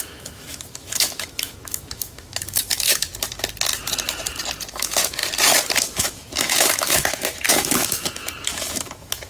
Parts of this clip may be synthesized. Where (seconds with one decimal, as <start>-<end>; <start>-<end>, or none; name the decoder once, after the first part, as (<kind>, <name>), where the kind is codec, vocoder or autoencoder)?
0.0-3.1 (autoencoder, DAC-VAE); 4.7-5.2; 5.8-9.3